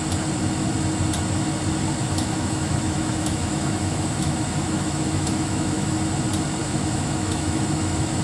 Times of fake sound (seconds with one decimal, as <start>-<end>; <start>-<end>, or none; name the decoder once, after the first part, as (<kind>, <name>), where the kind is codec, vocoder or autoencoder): 2.0-6.0 (autoencoder, DAC-VAE); 6.6-8.2